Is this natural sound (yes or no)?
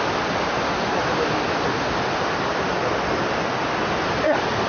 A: yes